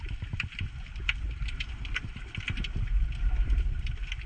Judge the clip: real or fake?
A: real